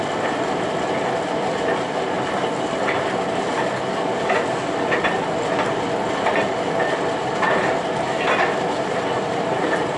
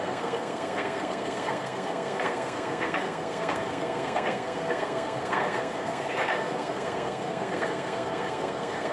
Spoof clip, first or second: second